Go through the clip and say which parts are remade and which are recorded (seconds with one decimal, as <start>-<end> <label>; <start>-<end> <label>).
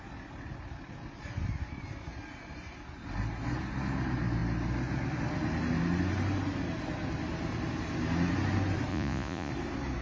0.0-8.9 recorded; 8.9-9.5 remade; 9.5-10.0 recorded